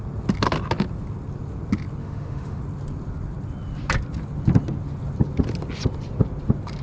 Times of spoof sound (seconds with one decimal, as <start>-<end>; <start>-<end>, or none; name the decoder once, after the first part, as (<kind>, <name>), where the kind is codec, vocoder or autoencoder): 2.0-2.6 (autoencoder, DAC-VAE)